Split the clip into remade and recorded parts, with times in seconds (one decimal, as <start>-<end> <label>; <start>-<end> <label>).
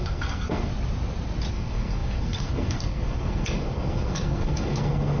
0.0-0.7 remade; 0.7-1.5 recorded; 1.5-5.2 remade